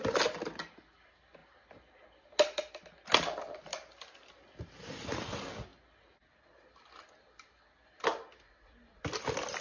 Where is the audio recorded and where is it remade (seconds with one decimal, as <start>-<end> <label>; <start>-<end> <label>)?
0.0-9.6 recorded